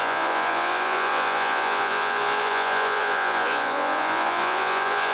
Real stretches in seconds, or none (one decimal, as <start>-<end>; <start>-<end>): none